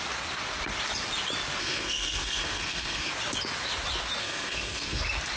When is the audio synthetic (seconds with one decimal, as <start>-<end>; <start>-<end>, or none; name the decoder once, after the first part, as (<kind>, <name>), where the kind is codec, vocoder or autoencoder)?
1.6-3.1 (codec, SNAC); 4.2-5.0